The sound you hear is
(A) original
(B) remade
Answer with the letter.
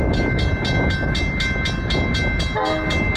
A